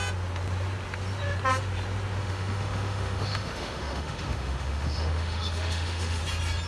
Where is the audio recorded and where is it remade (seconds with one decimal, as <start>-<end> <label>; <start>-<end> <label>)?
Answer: 0.0-2.2 recorded; 2.2-6.2 remade; 6.2-6.7 recorded